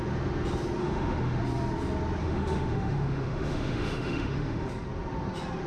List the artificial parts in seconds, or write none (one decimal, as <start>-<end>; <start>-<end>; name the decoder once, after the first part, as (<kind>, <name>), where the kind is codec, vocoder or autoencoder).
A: 0.8-1.4 (autoencoder, DAC-VAE); 2.2-4.7